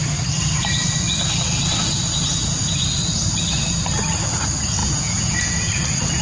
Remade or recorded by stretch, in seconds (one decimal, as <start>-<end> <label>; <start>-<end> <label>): 0.0-4.8 recorded; 4.8-5.7 remade; 5.7-6.2 recorded